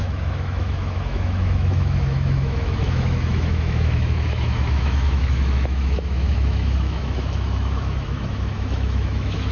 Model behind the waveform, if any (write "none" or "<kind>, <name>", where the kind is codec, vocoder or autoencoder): autoencoder, DAC-VAE